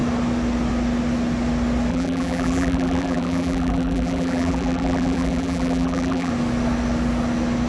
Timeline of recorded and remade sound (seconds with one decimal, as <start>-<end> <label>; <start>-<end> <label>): 0.0-1.9 recorded; 1.9-6.3 remade; 6.3-7.7 recorded

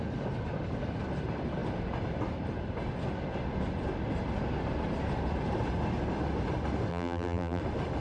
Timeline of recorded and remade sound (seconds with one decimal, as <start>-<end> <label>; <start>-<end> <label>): 0.0-6.9 recorded; 6.9-7.6 remade; 7.6-8.0 recorded

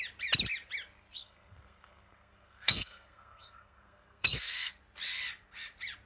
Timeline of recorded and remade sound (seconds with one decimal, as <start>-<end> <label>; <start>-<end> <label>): 0.0-1.2 recorded; 1.2-4.7 remade; 4.7-6.1 recorded

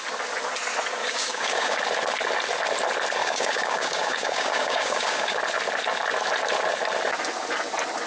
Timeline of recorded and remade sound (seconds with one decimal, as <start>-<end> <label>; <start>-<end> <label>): 0.0-1.0 recorded; 1.0-1.8 remade; 1.8-3.2 recorded; 3.2-5.4 remade; 5.4-8.1 recorded

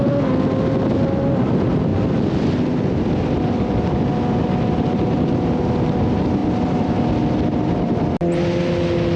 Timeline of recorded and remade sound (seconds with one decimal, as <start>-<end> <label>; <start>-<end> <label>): 0.0-6.4 recorded; 6.4-7.0 remade; 7.0-9.2 recorded

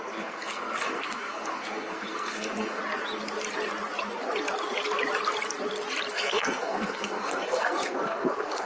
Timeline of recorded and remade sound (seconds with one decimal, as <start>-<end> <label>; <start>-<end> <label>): 0.0-2.8 remade; 2.8-6.1 recorded; 6.1-8.7 remade

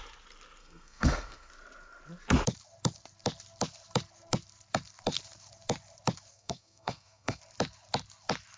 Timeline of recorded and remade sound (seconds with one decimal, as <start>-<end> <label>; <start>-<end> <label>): 0.0-0.6 recorded; 0.6-1.5 remade; 1.5-6.3 recorded; 6.3-7.4 remade; 7.4-8.6 recorded

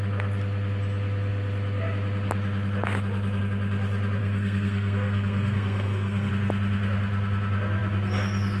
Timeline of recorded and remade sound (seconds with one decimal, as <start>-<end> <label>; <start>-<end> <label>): 0.0-4.2 recorded; 4.2-6.3 remade; 6.3-8.6 recorded